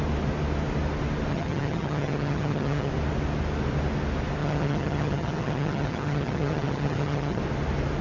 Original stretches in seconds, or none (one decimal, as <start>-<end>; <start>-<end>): 0.0-1.3; 2.9-4.4; 7.4-8.0